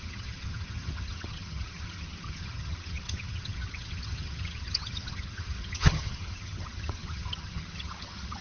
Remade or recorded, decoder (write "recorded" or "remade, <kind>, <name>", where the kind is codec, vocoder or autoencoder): remade, vocoder, HiFi-GAN